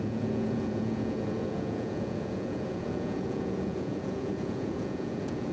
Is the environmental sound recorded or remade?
remade